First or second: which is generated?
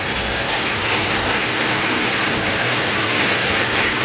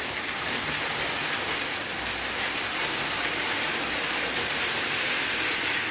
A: first